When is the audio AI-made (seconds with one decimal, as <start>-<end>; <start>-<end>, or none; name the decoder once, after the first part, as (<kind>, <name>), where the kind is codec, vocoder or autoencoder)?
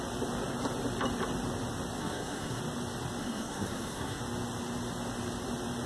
2.0-2.6 (codec, SNAC); 3.2-4.2